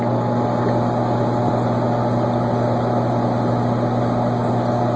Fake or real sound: real